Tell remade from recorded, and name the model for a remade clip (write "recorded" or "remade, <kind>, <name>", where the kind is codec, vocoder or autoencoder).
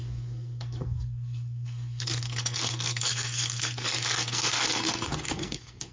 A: remade, codec, SNAC